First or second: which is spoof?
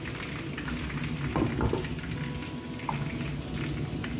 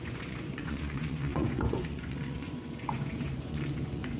second